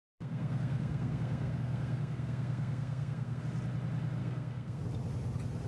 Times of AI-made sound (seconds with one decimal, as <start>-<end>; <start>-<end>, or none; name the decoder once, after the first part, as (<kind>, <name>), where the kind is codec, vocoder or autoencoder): 0.0-3.4 (codec, SNAC); 4.2-4.8